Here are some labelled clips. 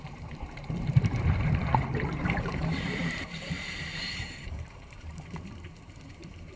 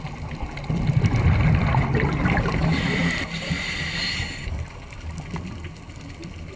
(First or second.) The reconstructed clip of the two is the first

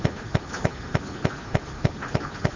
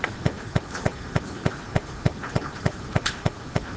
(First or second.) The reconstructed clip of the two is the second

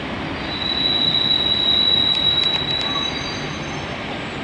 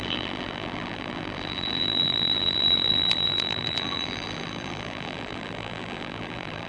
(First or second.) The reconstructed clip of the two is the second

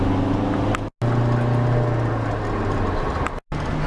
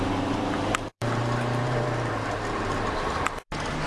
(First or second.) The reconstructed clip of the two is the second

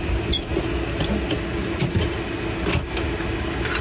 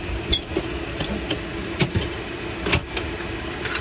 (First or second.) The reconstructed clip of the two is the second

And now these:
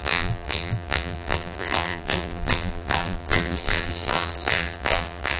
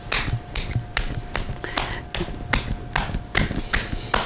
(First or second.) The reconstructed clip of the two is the first